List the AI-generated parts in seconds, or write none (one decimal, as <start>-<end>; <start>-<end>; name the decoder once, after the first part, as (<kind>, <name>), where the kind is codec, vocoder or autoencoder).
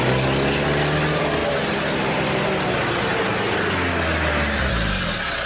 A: none